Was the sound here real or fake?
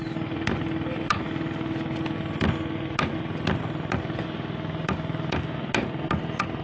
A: real